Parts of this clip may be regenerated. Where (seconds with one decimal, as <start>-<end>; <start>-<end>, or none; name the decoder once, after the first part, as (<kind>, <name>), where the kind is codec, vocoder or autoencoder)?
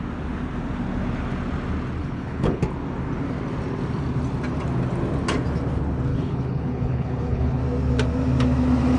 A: 2.0-2.6 (codec, HILCodec); 6.1-7.6